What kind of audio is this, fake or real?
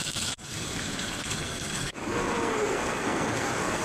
fake